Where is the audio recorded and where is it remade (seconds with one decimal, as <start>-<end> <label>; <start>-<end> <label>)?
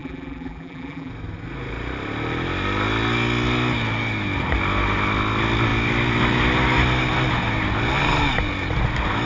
0.0-1.1 remade; 1.1-9.2 recorded